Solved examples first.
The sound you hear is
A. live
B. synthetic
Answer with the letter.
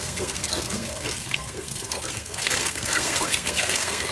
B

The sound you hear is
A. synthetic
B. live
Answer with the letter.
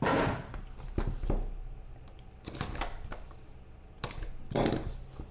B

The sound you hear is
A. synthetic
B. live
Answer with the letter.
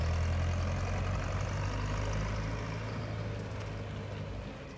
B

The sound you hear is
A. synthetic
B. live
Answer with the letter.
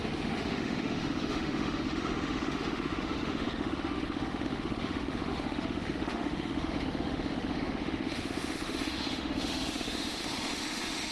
A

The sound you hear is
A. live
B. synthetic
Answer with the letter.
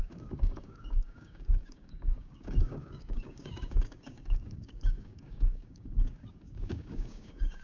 B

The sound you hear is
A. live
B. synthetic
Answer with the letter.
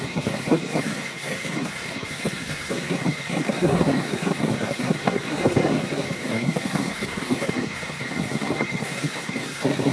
B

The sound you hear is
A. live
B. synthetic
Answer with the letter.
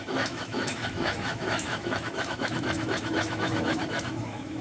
B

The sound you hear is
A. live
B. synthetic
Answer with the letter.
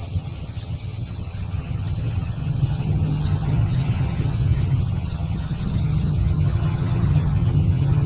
B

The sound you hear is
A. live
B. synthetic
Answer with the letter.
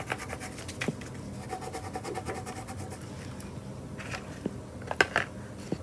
A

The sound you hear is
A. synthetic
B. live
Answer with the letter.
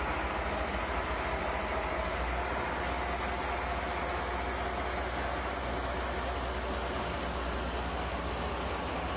B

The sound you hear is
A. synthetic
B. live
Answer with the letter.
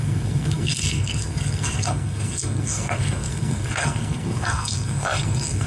A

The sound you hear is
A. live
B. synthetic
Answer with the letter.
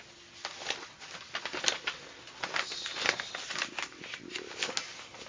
A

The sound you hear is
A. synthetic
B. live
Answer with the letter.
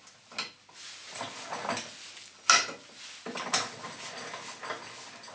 B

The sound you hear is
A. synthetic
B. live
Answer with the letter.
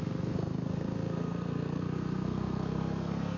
A